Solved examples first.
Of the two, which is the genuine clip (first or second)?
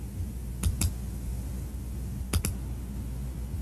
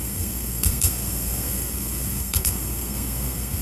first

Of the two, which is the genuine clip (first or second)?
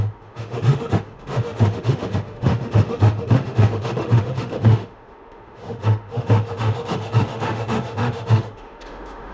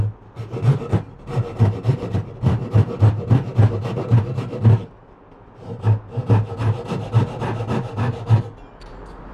second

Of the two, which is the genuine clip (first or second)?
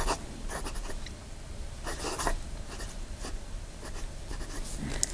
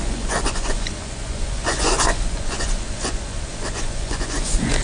first